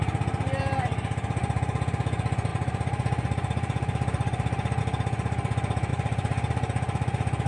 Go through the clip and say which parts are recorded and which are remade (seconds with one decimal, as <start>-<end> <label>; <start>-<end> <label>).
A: 0.0-2.5 recorded; 2.5-4.8 remade; 4.8-5.9 recorded; 5.9-7.5 remade